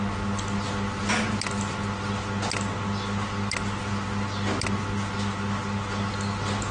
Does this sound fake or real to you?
real